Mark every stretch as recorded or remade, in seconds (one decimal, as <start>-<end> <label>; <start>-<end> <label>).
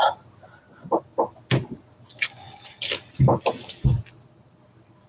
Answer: 0.0-5.1 recorded